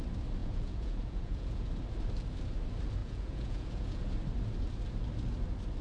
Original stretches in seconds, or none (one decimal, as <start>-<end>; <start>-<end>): 0.0-0.4; 1.7-3.0; 4.0-5.8